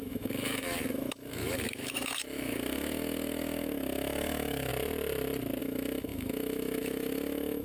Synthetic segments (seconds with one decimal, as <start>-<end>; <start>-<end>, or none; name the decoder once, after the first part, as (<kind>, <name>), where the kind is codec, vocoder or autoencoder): 0.0-4.7 (autoencoder, DAC-VAE); 5.6-7.6